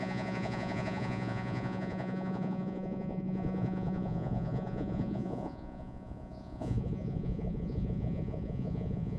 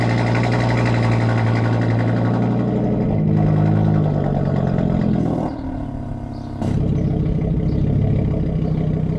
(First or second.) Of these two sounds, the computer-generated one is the first